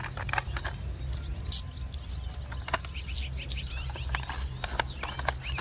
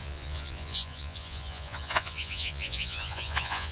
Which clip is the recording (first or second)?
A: first